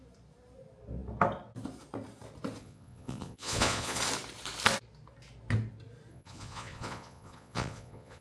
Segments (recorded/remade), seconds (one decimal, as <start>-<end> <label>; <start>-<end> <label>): 0.0-2.6 recorded; 2.6-4.0 remade; 4.0-6.1 recorded; 6.1-8.2 remade